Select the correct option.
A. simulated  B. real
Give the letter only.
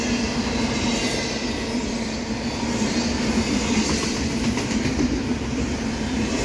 B